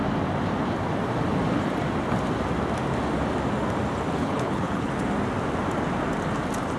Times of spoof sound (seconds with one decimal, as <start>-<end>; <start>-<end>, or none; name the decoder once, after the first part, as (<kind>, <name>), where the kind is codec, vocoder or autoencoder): 4.2-4.9 (codec, HILCodec)